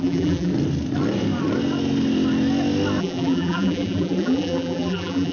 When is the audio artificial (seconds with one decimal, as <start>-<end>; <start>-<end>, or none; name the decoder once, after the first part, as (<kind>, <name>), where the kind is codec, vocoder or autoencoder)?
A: 0.0-0.5 (vocoder, BigVGAN v2); 3.0-5.3